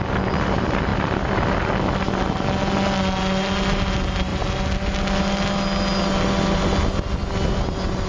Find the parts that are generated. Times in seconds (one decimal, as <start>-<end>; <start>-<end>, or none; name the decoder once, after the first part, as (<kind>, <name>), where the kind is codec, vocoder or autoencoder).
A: none